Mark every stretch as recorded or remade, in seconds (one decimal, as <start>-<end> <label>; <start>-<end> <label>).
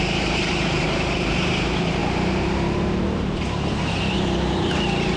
0.0-2.0 remade; 2.0-5.2 recorded